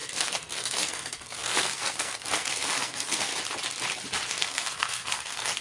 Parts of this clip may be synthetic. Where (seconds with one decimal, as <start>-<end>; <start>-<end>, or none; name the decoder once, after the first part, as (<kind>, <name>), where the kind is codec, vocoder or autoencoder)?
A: 0.0-3.3 (codec, SNAC); 4.3-5.6

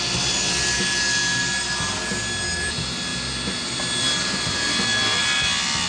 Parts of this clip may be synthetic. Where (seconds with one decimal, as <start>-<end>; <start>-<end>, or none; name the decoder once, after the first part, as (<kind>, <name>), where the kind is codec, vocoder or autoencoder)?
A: none